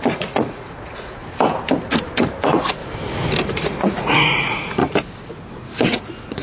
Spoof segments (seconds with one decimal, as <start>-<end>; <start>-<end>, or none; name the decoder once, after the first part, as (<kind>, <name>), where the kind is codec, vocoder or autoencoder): 0.0-1.2 (vocoder, Vocos); 2.2-2.8; 3.4-4.8; 5.6-6.4